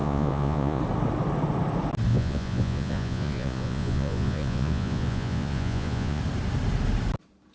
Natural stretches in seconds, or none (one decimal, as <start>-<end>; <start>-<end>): 0.8-2.1; 6.2-7.5